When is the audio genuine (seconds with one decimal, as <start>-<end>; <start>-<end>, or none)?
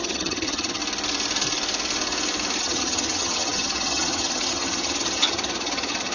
0.8-2.6